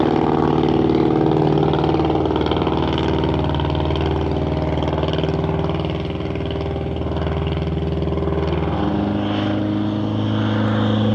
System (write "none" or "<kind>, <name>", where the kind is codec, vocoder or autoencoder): none